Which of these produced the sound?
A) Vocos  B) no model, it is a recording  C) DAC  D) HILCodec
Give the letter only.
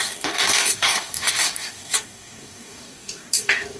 C